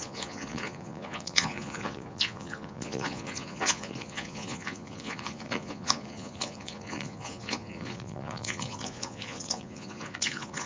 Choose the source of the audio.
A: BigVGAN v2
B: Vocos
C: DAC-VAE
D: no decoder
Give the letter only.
B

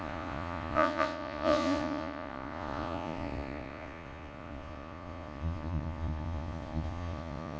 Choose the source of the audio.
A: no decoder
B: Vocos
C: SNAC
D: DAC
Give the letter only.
B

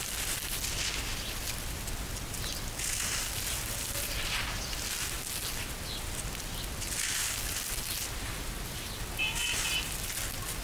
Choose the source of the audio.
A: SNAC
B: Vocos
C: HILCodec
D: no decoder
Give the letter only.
D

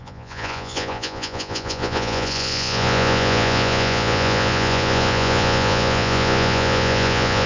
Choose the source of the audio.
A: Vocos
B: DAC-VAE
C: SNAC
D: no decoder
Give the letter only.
A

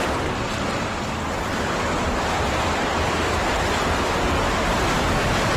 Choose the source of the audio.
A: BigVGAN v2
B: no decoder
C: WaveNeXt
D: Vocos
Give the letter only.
B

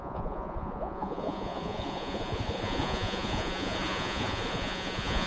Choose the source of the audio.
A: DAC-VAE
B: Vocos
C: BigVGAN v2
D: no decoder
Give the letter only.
B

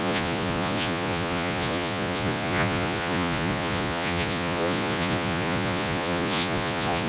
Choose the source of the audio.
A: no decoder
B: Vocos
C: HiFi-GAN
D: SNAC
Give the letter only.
B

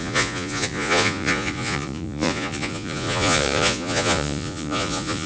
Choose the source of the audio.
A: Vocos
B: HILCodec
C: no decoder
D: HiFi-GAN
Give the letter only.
A